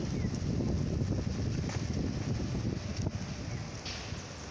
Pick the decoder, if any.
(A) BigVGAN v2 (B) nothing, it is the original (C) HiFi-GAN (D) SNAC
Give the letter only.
B